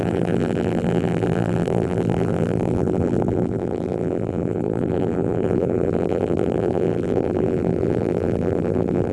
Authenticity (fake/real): fake